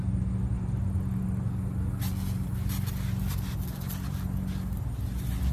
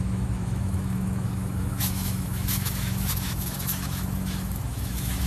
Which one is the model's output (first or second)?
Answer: second